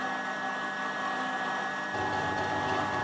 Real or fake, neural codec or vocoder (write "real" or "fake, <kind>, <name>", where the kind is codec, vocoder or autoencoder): real